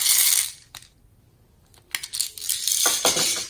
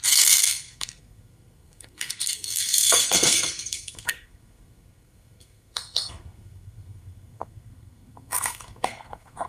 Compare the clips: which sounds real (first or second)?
first